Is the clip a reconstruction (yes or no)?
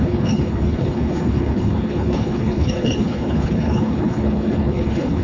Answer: yes